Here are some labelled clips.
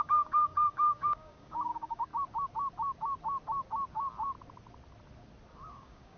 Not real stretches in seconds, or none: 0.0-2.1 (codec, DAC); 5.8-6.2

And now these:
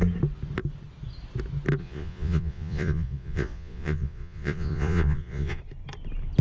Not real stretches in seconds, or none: 1.8-5.6 (vocoder, Vocos)

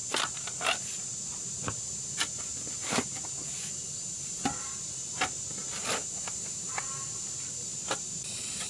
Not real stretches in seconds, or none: none